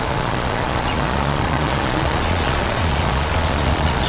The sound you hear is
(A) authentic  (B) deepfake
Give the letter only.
B